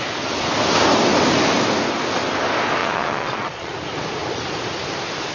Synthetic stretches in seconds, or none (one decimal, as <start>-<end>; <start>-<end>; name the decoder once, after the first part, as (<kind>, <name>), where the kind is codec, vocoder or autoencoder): 2.8-3.7 (vocoder, Vocos)